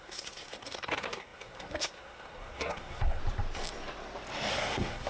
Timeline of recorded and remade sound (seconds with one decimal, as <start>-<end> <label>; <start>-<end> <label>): 0.0-3.2 remade; 3.2-4.5 recorded; 4.5-5.1 remade

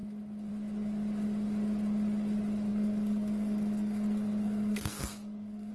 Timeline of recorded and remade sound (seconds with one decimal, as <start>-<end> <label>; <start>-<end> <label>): 0.0-2.7 recorded; 2.7-5.7 remade

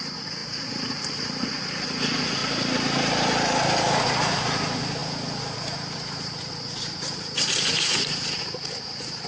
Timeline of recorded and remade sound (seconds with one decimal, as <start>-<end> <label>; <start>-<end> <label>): 0.0-2.4 remade; 2.4-3.9 recorded; 3.9-9.3 remade

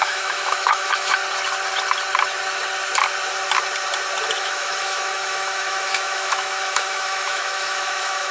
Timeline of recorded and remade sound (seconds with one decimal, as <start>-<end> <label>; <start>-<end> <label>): 0.0-1.2 remade; 1.2-4.4 recorded; 4.4-8.3 remade

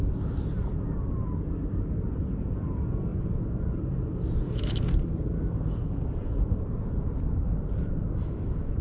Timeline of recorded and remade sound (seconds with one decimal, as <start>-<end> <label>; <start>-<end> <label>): 0.0-8.8 remade

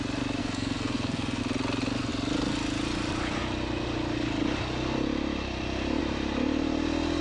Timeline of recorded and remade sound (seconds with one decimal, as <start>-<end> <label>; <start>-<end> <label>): 0.0-0.4 recorded; 0.4-1.4 remade; 1.4-7.2 recorded

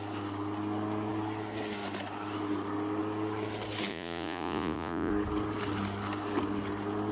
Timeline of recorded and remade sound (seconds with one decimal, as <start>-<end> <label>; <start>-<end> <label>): 0.0-3.9 recorded; 3.9-5.1 remade; 5.1-7.1 recorded

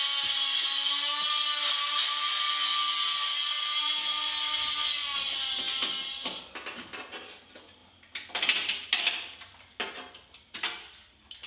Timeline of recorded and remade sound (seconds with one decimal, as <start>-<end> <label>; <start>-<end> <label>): 0.0-11.5 recorded